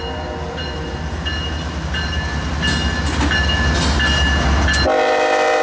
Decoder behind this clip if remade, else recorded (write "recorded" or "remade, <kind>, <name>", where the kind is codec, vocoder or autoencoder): recorded